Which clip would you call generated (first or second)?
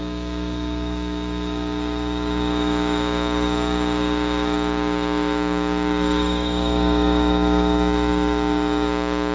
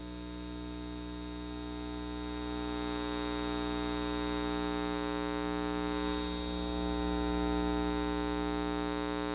first